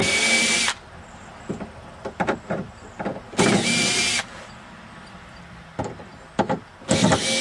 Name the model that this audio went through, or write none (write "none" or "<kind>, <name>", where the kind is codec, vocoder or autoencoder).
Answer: none